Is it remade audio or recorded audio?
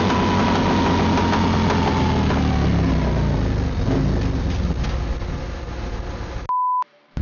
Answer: recorded